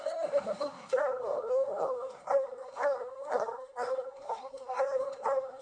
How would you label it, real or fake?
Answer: fake